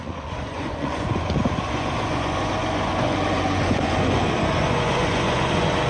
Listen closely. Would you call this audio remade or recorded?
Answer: remade